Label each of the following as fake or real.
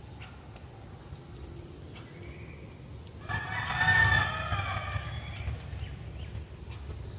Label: real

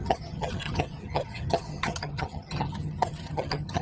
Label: fake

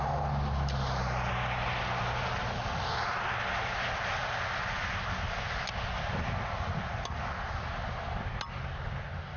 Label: real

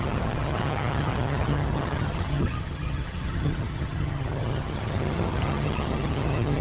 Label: fake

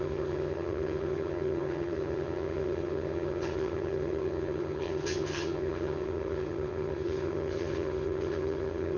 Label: fake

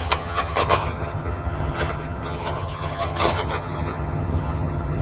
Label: fake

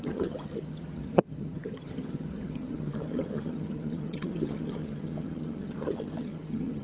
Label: fake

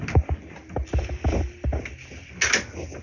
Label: real